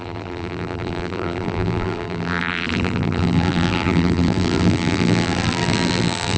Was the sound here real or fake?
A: fake